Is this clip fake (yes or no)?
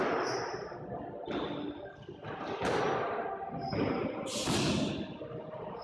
no